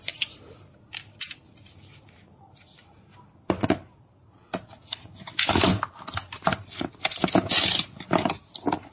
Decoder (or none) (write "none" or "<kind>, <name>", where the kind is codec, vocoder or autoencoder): none